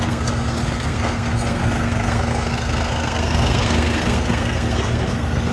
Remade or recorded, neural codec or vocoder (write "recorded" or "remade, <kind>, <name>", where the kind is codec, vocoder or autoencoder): remade, codec, SNAC